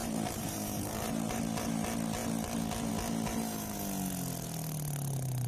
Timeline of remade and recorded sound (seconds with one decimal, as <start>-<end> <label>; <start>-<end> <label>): 0.0-1.4 remade; 1.4-5.5 recorded